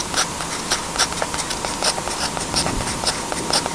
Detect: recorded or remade recorded